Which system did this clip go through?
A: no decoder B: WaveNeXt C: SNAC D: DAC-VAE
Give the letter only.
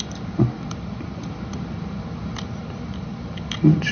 A